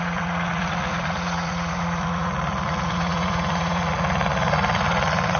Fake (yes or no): yes